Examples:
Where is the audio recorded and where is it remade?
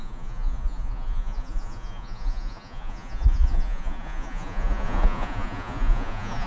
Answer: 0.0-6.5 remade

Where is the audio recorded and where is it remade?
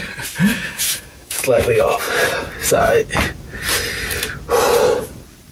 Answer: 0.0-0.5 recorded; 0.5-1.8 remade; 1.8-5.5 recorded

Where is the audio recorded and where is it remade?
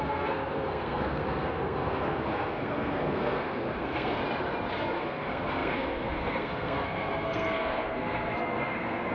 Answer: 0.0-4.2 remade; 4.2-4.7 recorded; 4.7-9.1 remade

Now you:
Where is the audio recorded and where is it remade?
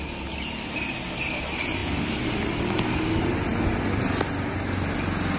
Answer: 0.0-5.4 recorded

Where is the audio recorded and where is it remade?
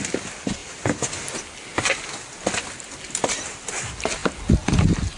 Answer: 0.0-5.2 recorded